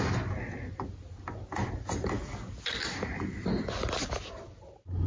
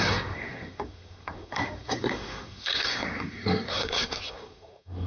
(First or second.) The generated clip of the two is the second